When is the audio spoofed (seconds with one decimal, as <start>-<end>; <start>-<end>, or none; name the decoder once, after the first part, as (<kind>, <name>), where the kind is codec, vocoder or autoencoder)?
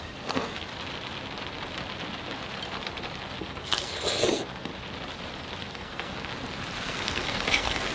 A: 0.0-0.7 (codec, SNAC); 3.4-4.7; 5.6-6.3; 6.8-7.9